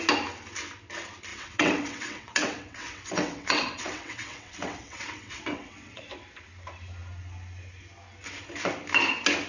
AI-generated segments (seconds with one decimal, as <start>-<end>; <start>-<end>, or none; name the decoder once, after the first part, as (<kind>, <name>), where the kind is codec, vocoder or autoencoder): 1.3-6.0 (vocoder, WaveNeXt)